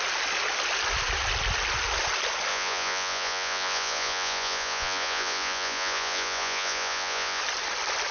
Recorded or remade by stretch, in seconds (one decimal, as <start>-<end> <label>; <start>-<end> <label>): 0.0-2.5 recorded; 2.5-7.4 remade; 7.4-8.1 recorded